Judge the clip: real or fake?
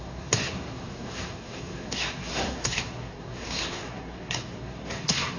fake